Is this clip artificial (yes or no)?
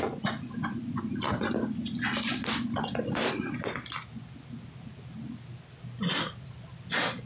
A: no